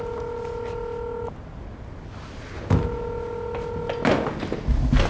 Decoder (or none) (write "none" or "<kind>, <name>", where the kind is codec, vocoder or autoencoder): none